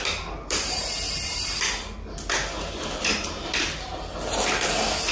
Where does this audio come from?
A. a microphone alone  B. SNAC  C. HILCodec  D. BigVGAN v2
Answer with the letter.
A